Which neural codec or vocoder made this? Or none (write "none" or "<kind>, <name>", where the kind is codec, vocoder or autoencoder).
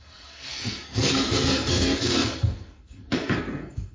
codec, SNAC